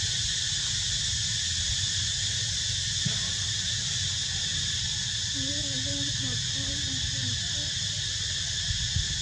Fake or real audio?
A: real